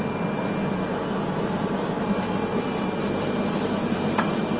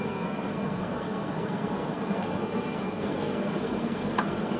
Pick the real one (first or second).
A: first